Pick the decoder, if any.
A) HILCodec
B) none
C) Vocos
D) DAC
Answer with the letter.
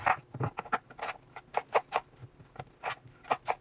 B